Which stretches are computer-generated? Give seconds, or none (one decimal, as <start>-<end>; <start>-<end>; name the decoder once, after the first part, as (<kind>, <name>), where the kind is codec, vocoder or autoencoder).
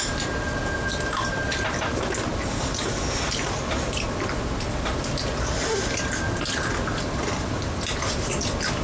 none